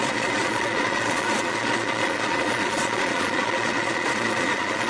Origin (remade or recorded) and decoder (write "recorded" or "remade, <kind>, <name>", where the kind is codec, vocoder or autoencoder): remade, vocoder, Vocos